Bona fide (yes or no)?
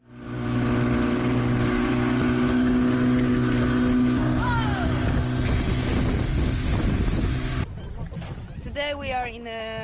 yes